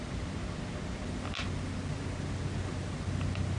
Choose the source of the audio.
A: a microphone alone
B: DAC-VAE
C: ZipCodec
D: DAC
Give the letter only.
A